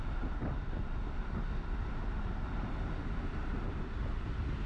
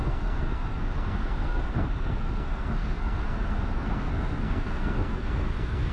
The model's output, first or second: second